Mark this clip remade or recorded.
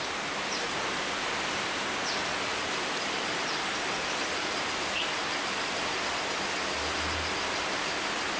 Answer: recorded